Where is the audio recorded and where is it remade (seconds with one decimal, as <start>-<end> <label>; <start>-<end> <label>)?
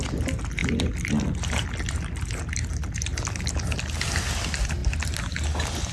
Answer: 0.0-5.9 recorded